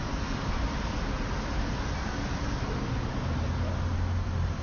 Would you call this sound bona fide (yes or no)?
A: yes